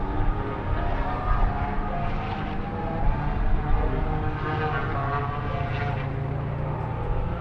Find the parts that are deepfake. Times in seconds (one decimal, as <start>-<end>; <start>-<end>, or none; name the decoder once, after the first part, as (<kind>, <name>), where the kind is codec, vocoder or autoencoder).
none